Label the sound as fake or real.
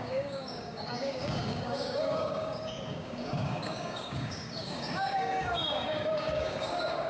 fake